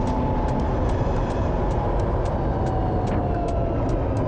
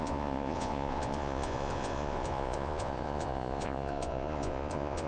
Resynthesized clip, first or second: second